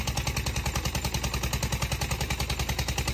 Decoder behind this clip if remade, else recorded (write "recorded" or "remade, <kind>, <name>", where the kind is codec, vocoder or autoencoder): recorded